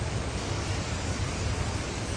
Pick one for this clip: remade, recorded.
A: remade